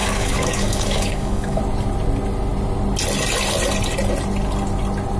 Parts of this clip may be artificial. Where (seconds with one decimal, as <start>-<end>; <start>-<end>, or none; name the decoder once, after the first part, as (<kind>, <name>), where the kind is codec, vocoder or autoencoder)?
0.0-1.6 (codec, DAC)